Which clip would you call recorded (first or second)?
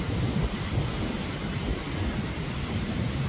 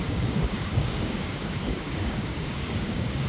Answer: first